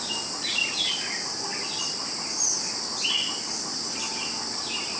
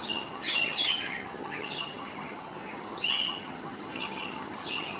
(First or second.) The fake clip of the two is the second